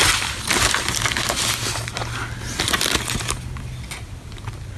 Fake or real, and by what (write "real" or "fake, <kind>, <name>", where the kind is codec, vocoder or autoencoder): real